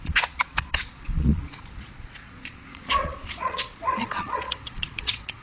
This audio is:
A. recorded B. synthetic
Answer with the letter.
B